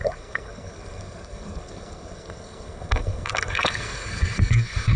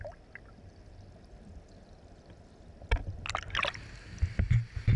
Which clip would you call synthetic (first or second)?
first